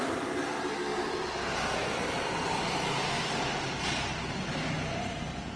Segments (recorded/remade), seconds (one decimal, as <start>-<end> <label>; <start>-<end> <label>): 0.0-4.1 recorded; 4.1-4.7 remade; 4.7-5.6 recorded

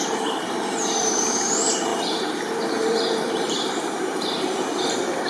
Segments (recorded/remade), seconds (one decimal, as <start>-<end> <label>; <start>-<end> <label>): 0.0-5.3 remade